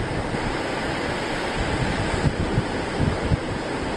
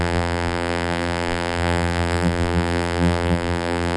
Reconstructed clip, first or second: second